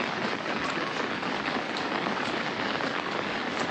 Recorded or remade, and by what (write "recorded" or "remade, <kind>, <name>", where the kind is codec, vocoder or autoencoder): remade, codec, DAC